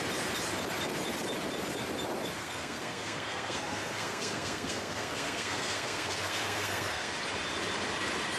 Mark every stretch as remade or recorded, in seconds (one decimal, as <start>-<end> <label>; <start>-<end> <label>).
0.0-2.4 recorded; 2.4-7.1 remade; 7.1-8.4 recorded